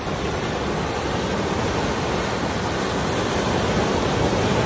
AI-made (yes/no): no